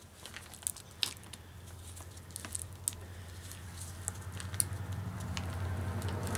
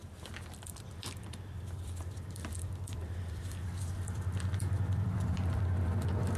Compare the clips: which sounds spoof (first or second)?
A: second